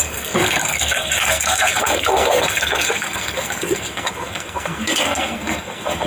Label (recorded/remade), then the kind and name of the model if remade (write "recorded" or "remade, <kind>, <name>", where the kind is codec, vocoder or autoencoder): remade, codec, SNAC